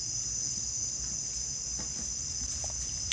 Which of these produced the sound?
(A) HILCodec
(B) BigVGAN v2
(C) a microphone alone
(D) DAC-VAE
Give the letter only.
C